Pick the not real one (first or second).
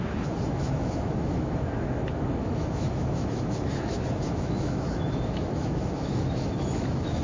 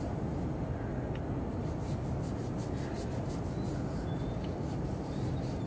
first